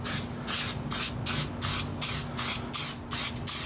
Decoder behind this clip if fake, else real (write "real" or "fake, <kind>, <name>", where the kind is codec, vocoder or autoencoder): real